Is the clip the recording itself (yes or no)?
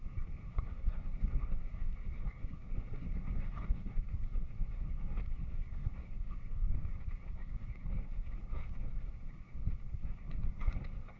no